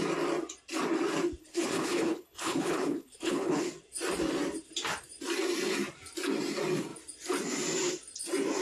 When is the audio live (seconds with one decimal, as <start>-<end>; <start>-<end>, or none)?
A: 0.0-1.4; 3.7-8.6